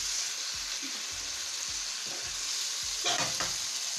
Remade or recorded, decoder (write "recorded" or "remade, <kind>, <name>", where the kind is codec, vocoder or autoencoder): recorded